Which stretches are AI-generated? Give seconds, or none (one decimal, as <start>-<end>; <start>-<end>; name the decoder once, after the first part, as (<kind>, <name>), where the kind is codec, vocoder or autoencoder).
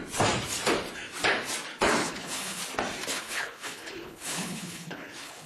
2.0-2.6 (codec, HILCodec); 3.1-5.5